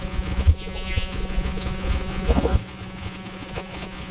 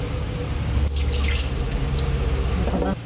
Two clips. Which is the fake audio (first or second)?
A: first